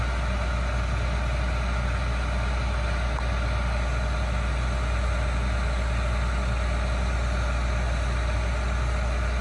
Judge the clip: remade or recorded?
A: recorded